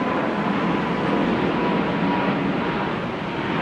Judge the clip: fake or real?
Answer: real